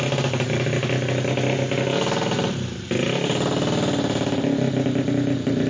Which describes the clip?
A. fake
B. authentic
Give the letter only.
B